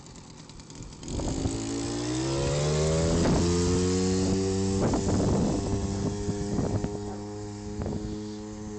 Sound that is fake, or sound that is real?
real